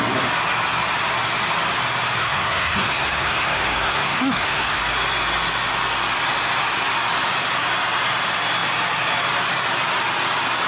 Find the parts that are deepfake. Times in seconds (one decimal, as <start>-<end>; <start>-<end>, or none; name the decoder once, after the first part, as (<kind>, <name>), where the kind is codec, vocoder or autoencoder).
2.2-4.8 (codec, SNAC)